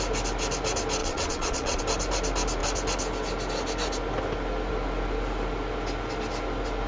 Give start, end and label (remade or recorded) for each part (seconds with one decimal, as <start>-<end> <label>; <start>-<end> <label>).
0.0-1.0 recorded; 1.0-1.8 remade; 1.8-6.9 recorded